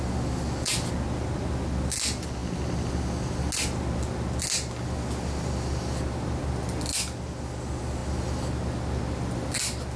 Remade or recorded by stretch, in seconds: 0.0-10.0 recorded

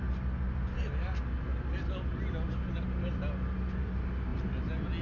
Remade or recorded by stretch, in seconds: 0.0-5.0 recorded